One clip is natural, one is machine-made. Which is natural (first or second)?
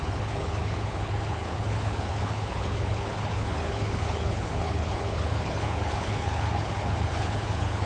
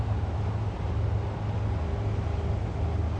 second